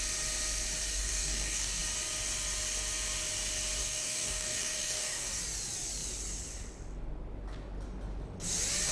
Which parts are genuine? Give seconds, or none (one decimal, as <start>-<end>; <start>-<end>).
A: 0.0-0.9; 1.8-3.8; 5.4-8.9